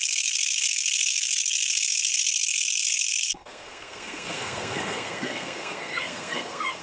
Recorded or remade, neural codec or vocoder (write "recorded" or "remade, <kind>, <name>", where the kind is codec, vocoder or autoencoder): remade, codec, SNAC